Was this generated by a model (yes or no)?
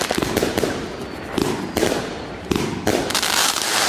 no